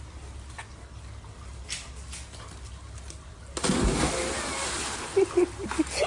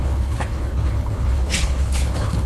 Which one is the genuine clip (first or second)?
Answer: first